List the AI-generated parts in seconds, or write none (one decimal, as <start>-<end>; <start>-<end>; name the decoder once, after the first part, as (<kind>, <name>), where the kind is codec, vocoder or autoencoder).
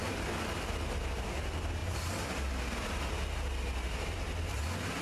0.0-0.7 (vocoder, BigVGAN v2); 1.8-2.6